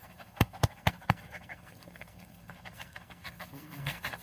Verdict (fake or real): fake